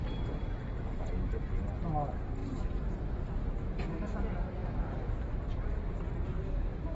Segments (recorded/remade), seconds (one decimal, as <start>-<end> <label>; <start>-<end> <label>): 0.0-6.9 recorded